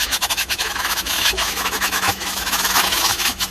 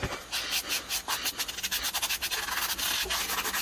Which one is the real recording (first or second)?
second